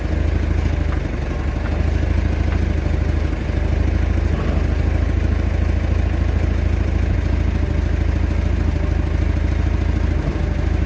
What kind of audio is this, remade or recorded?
recorded